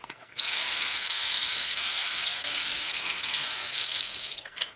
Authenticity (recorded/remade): remade